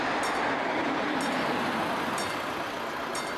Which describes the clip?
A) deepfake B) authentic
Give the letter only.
B